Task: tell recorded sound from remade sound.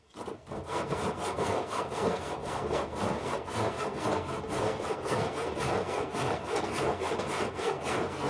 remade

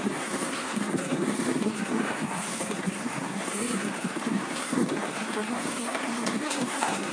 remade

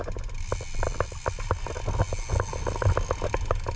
recorded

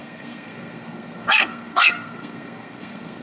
remade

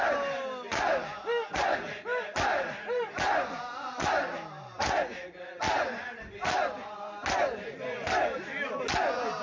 recorded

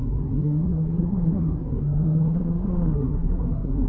remade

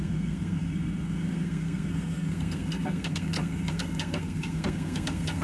remade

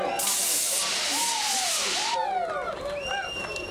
recorded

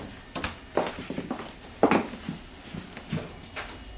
recorded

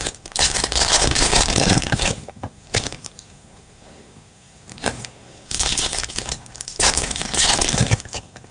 remade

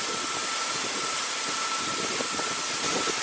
recorded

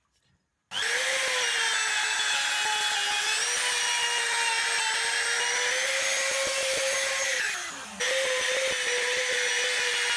recorded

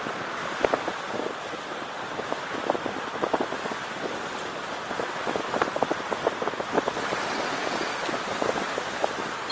recorded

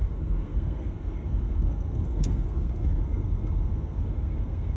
remade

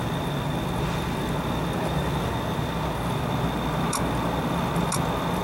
recorded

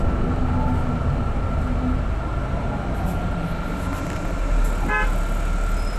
recorded